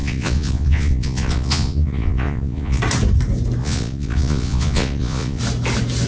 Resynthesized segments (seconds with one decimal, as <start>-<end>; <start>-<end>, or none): 0.0-2.8; 3.6-5.4